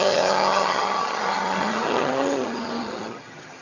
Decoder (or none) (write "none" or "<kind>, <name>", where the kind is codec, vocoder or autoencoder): vocoder, HiFi-GAN